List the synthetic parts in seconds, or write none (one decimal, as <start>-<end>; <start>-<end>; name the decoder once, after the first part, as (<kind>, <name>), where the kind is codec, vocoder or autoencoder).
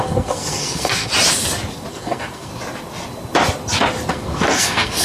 0.0-1.1 (codec, SNAC); 1.9-2.5; 4.1-5.0